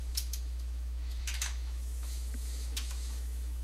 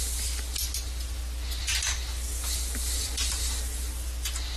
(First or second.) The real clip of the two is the second